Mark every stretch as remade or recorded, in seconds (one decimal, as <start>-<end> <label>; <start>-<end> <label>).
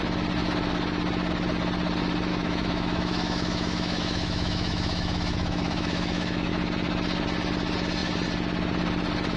0.0-2.3 recorded; 2.3-6.5 remade; 6.5-9.4 recorded